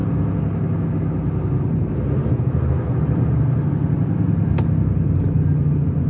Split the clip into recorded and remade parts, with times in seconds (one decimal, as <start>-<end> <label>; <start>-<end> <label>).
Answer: 0.0-6.1 recorded